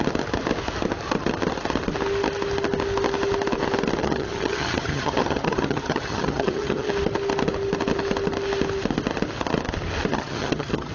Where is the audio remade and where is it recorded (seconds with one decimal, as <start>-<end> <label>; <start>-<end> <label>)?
0.0-4.0 recorded; 4.0-6.9 remade; 6.9-10.1 recorded; 10.1-10.9 remade